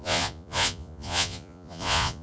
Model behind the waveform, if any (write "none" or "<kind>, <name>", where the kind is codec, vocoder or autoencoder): vocoder, Vocos